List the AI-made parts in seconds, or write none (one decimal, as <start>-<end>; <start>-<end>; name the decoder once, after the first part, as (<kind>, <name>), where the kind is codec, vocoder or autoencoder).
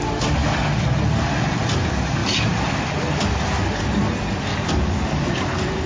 0.0-0.4 (vocoder, BigVGAN v2); 1.6-2.2; 4.1-4.5; 5.3-5.9